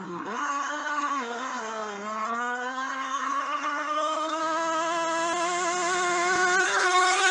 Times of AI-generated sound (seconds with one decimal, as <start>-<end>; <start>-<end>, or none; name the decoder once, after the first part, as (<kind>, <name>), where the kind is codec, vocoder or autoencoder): 0.0-4.4 (codec, SNAC); 6.6-7.3